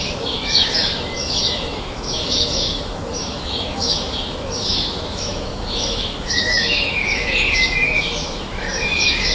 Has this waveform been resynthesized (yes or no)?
yes